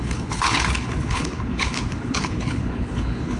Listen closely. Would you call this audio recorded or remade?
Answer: remade